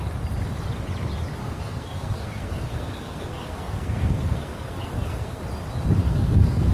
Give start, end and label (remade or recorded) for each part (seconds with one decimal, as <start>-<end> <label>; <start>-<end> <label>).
0.0-1.4 recorded; 1.4-5.4 remade; 5.4-6.0 recorded; 6.0-6.7 remade